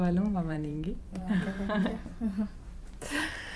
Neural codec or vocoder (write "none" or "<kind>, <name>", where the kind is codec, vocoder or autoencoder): vocoder, BigVGAN v2